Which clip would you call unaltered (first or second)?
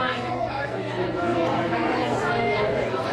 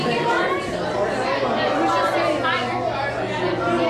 second